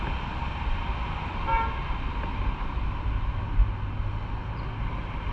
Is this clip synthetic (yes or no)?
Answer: no